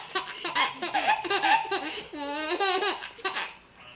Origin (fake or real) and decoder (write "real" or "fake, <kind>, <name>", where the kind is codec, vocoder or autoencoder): real